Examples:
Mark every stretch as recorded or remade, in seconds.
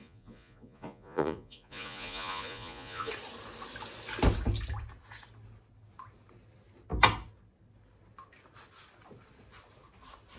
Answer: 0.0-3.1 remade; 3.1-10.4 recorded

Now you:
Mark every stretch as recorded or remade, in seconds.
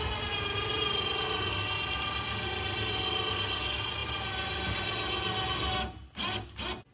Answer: 0.0-6.9 recorded